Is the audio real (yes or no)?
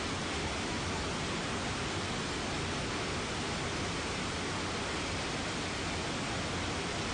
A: yes